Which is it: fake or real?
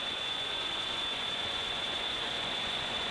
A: fake